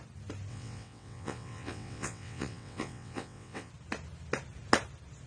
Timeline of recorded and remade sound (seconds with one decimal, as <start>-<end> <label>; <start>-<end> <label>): 0.0-0.5 recorded; 0.5-3.7 remade; 3.7-5.3 recorded